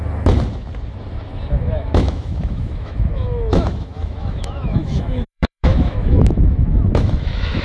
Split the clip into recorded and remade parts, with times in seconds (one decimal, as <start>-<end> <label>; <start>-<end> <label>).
0.0-1.6 recorded; 1.6-7.6 remade